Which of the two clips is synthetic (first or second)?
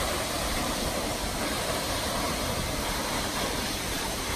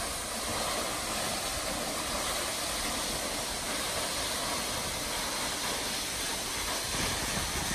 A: first